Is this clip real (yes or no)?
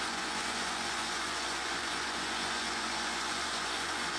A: no